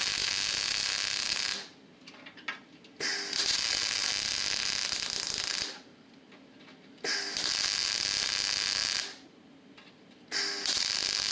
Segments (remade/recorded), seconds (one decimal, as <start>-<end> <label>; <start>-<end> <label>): 0.0-11.3 recorded